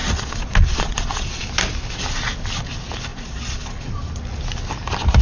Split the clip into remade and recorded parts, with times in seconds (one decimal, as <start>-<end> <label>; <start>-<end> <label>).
0.0-1.4 remade; 1.4-3.1 recorded; 3.1-3.9 remade; 3.9-5.2 recorded